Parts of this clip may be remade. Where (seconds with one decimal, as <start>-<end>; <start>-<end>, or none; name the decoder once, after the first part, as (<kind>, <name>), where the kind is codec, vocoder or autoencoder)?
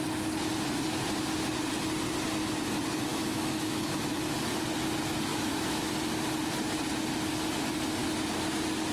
3.1-4.0 (autoencoder, DAC-VAE); 5.3-5.9